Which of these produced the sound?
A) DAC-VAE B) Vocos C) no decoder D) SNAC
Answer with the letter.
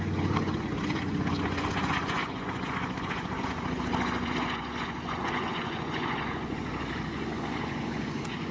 B